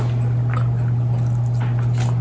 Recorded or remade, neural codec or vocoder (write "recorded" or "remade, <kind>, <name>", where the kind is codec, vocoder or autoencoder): recorded